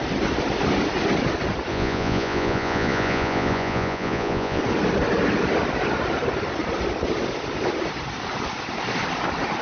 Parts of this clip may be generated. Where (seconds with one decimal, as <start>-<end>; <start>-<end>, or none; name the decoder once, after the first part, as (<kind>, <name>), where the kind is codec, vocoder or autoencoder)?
1.7-4.6 (vocoder, Vocos)